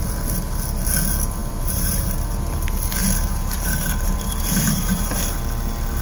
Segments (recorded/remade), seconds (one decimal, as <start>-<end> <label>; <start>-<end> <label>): 0.0-1.4 recorded; 1.4-2.6 remade; 2.6-3.0 recorded; 3.0-5.4 remade; 5.4-6.0 recorded